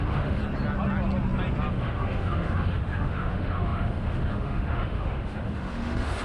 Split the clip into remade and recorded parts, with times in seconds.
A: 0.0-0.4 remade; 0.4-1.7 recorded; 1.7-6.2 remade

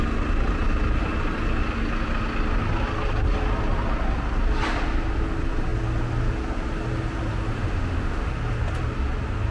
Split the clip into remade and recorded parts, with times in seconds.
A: 0.0-7.5 recorded; 7.5-8.3 remade; 8.3-9.5 recorded